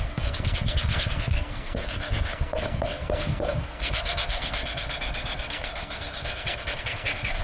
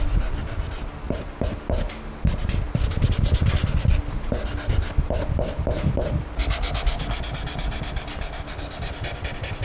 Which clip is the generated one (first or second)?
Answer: first